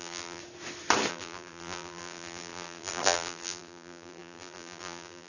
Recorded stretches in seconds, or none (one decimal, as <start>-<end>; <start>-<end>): 0.4-1.1